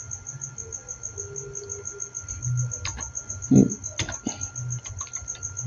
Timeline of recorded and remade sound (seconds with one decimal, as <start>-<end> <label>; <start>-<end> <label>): 0.0-5.7 recorded